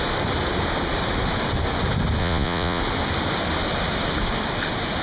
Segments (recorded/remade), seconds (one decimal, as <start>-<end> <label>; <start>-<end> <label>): 0.0-2.2 recorded; 2.2-2.8 remade; 2.8-5.0 recorded